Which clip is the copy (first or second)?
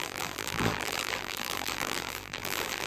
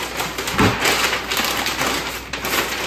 first